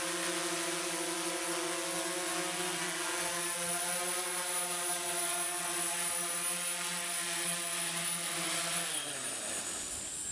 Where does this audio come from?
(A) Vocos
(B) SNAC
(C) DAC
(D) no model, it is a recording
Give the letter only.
D